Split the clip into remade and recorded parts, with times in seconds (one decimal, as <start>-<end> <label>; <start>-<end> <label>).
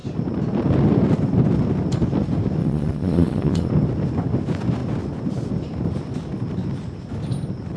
0.0-2.6 recorded; 2.6-3.7 remade; 3.7-7.8 recorded